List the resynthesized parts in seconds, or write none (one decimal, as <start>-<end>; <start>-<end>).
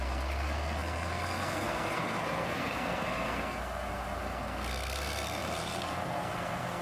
0.0-6.8